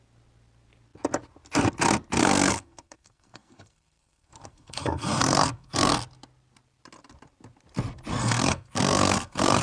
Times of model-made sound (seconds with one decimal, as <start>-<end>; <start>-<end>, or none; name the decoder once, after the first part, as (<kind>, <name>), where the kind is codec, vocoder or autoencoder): 2.2-5.9 (codec, SNAC); 8.2-9.6